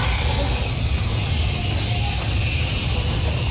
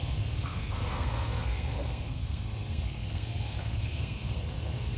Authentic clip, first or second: first